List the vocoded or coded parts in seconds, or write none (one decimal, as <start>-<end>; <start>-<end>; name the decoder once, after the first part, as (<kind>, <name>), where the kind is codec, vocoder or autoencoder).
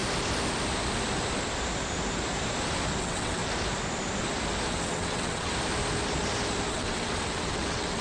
3.0-3.4 (vocoder, WaveNeXt); 4.7-5.5; 6.7-8.0